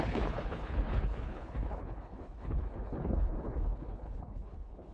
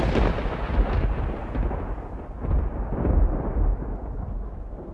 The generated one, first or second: first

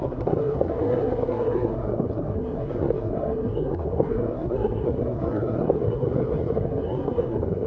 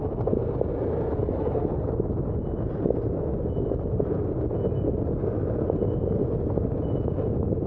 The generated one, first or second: first